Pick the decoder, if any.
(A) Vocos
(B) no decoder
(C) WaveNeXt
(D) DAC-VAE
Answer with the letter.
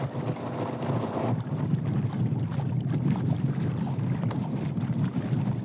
B